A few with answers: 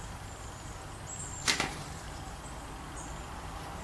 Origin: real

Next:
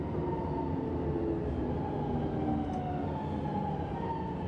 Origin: real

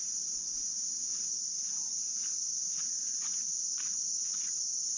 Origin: fake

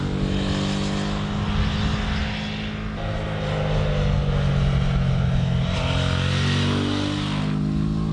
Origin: real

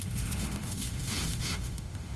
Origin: fake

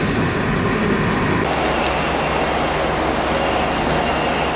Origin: real